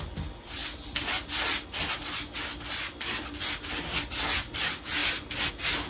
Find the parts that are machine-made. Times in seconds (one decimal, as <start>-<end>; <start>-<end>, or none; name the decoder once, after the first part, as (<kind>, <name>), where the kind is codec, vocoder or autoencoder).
none